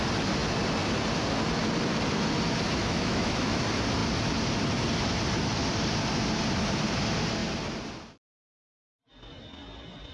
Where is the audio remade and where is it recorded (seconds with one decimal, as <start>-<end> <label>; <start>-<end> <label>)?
0.0-2.8 recorded; 2.8-3.6 remade; 3.6-10.1 recorded